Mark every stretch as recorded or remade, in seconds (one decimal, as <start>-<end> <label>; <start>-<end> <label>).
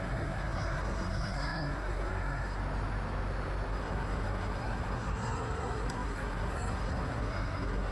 0.0-2.6 remade; 2.6-3.7 recorded; 3.7-7.9 remade